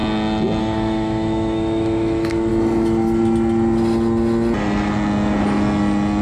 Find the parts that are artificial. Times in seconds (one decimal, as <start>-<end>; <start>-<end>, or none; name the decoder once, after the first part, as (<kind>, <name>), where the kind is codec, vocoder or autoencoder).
0.6-2.5 (autoencoder, DAC-VAE)